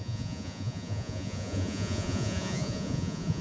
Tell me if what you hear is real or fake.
fake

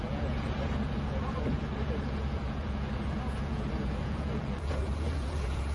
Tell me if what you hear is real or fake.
fake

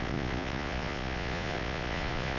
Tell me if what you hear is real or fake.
fake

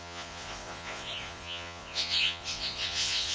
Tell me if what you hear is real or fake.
fake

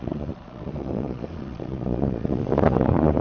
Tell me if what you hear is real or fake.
fake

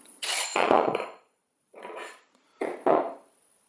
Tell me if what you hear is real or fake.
fake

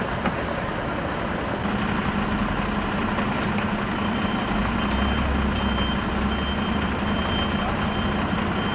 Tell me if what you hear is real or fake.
real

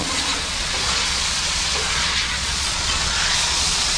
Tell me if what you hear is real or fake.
fake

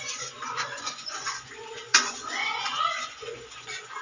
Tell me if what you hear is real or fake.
fake